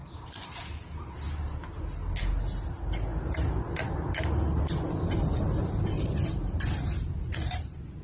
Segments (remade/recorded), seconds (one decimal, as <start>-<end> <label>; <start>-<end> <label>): 0.0-8.0 recorded